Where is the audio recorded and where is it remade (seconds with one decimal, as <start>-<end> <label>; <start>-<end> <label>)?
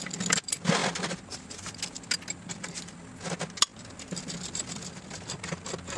0.0-0.8 recorded; 0.8-1.7 remade; 1.7-3.7 recorded; 3.7-4.3 remade; 4.3-6.0 recorded